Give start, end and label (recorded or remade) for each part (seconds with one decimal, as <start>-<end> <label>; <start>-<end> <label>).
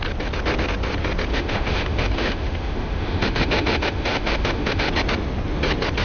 0.0-1.3 recorded; 1.3-4.9 remade; 4.9-6.0 recorded